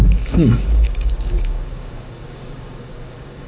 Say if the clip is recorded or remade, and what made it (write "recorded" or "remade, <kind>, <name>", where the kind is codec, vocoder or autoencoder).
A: remade, codec, DAC